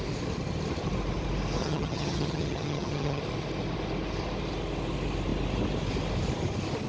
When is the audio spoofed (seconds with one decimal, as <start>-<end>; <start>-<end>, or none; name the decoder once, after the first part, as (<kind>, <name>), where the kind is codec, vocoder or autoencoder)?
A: 1.6-3.2 (vocoder, HiFi-GAN)